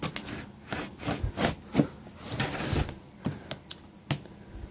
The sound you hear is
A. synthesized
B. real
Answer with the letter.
B